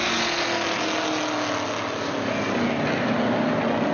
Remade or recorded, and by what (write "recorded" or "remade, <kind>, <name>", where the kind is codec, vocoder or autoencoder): recorded